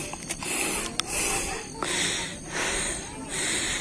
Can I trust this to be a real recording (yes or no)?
yes